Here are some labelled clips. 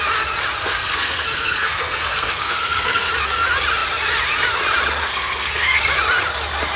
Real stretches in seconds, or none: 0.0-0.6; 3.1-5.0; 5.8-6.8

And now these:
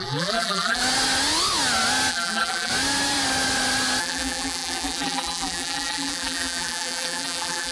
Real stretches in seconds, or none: 0.8-2.1; 2.7-4.0

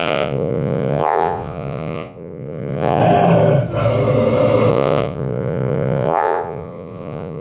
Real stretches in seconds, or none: 3.0-4.7

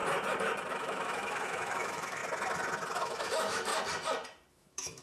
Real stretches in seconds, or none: 0.0-0.7; 2.2-3.0; 3.7-4.5